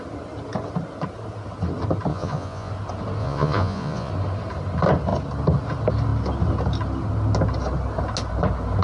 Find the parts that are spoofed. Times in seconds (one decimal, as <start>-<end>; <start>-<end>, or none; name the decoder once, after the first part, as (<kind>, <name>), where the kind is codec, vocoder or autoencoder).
2.1-2.7 (vocoder, Vocos); 3.2-4.1